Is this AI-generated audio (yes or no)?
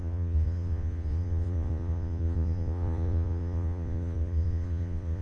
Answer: yes